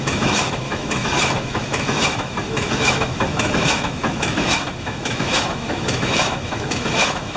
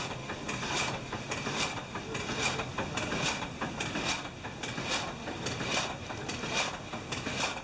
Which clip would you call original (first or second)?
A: second